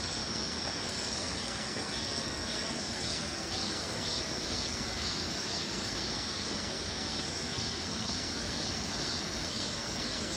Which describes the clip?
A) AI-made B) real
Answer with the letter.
A